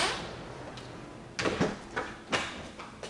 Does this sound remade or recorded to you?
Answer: recorded